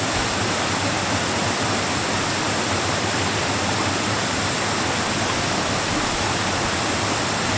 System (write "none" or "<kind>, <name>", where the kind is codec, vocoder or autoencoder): none